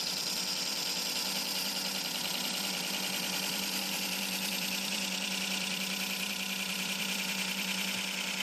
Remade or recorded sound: remade